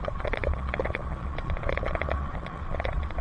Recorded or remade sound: remade